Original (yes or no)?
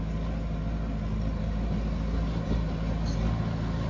yes